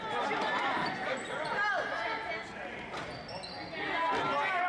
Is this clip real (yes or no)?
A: yes